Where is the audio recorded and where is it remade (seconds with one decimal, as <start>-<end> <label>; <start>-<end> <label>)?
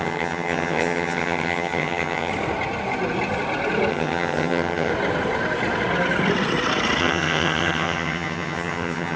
0.0-2.3 remade; 2.3-3.9 recorded; 3.9-4.9 remade; 4.9-7.0 recorded; 7.0-9.2 remade